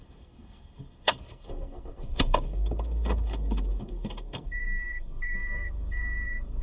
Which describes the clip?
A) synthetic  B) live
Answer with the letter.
A